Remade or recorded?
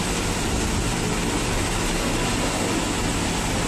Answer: recorded